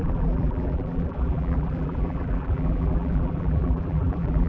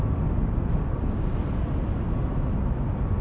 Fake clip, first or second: first